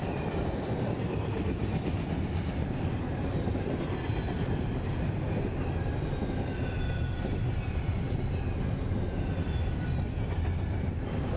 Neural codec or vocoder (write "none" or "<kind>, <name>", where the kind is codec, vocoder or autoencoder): none